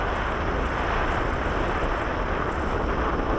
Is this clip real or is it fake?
real